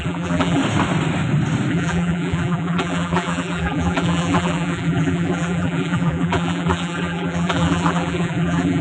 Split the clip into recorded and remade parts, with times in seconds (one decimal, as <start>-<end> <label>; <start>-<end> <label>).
0.0-0.6 remade; 0.6-1.7 recorded; 1.7-8.8 remade